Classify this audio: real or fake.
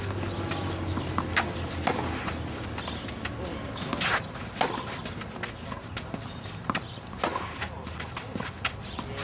real